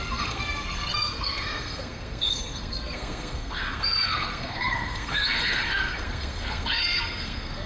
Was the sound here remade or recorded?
remade